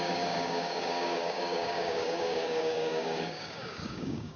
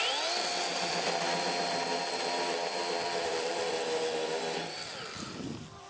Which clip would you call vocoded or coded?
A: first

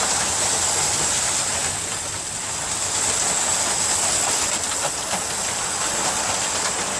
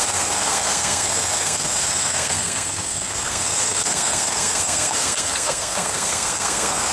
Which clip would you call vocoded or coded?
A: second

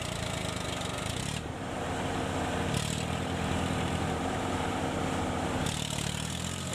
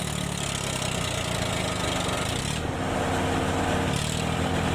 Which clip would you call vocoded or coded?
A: first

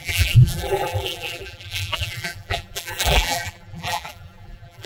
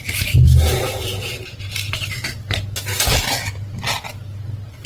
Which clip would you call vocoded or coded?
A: first